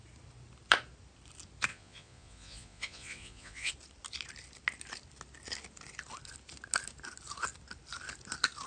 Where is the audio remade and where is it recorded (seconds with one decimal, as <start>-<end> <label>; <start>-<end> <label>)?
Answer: 0.0-1.7 recorded; 1.7-3.7 remade; 3.7-8.7 recorded